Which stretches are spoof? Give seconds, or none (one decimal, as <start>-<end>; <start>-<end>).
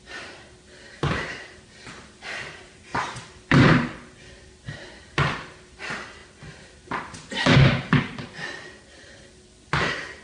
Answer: 0.0-6.2; 9.2-10.2